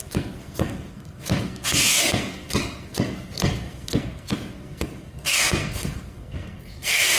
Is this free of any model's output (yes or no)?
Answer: no